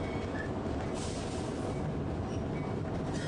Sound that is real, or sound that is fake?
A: real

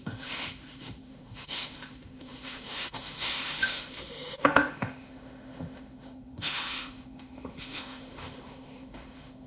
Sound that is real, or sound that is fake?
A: fake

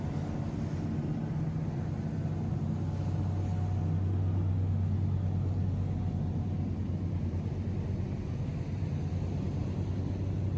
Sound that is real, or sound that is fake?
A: real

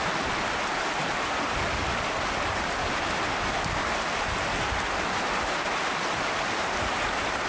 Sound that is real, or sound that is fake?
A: real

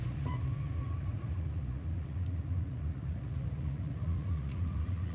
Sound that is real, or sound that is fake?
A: fake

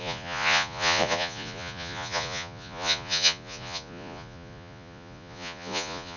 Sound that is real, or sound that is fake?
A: fake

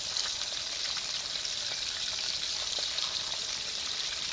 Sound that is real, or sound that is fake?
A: fake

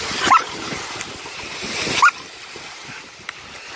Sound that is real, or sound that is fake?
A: fake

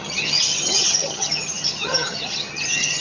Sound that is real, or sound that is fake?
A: fake